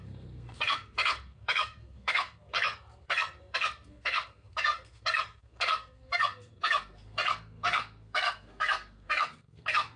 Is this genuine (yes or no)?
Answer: no